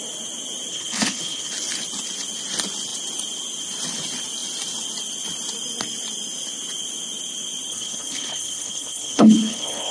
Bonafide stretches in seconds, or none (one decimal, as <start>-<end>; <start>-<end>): 0.0-0.7; 1.5-7.7